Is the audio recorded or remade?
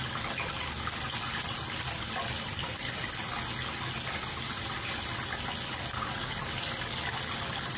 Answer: recorded